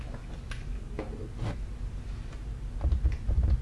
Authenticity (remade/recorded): recorded